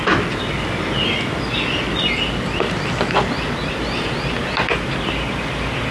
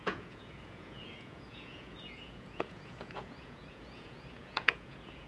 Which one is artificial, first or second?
second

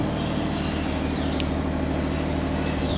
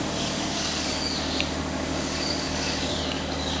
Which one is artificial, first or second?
second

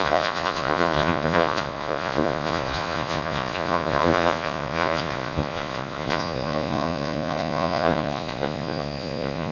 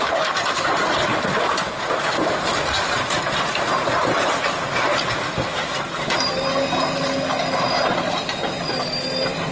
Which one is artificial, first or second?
first